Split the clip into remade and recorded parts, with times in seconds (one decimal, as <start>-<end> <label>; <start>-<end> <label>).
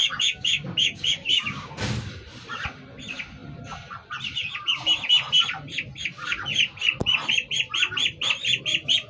0.0-1.7 remade; 1.7-9.1 recorded